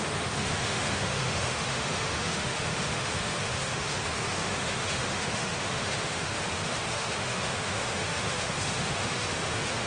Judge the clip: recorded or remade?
remade